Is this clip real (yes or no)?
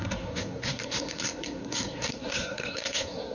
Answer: no